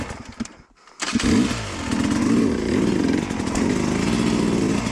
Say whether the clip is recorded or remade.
recorded